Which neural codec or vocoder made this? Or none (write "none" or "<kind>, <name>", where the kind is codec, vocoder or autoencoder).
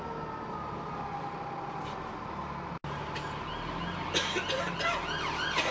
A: none